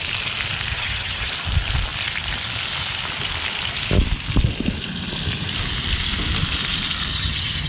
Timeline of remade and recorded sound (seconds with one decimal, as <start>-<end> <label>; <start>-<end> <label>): 0.0-0.7 recorded; 0.7-1.3 remade; 1.3-7.1 recorded; 7.1-7.7 remade